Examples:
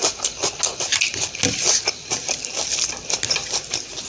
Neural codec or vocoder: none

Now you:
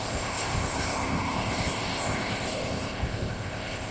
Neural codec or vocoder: codec, ZipCodec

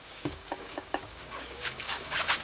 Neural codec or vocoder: codec, DAC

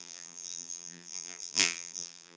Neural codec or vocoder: vocoder, BigVGAN v2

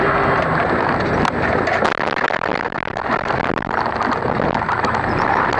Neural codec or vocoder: none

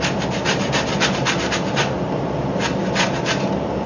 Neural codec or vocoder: none